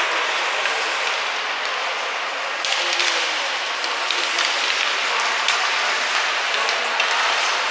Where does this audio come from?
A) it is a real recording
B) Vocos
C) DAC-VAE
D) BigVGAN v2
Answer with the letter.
A